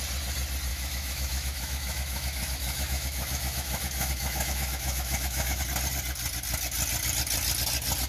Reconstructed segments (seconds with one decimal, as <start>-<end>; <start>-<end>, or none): 0.7-5.6